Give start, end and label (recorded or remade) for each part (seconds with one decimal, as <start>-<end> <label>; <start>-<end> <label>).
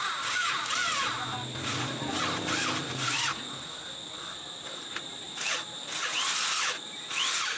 0.0-0.7 remade; 0.7-7.6 recorded